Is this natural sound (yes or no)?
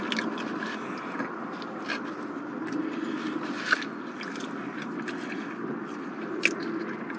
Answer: yes